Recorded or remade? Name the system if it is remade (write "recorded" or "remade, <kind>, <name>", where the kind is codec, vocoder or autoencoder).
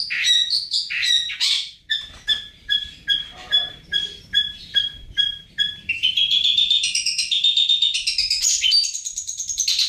remade, vocoder, BigVGAN v2